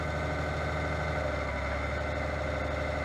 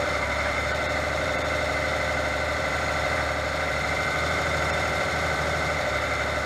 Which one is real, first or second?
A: first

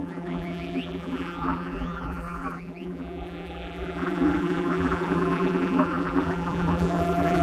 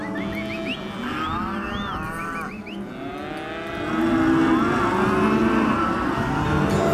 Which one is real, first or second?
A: second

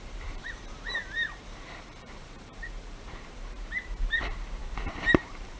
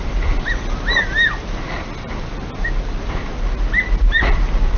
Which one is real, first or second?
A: second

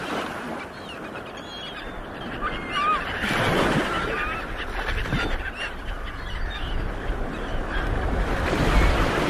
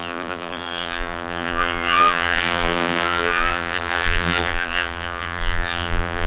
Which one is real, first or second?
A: first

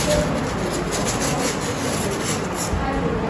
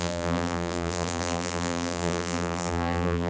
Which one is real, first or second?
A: first